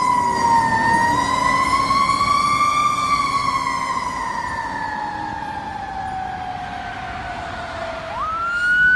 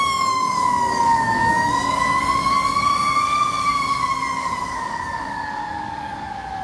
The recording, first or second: first